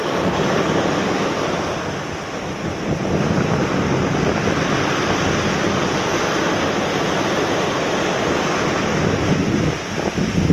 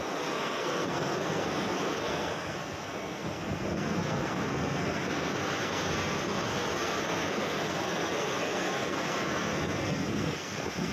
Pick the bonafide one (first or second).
first